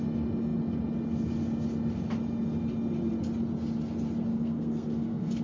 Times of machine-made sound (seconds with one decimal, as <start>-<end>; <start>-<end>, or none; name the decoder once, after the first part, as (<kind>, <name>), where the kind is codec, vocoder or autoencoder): 4.3-5.4 (codec, SNAC)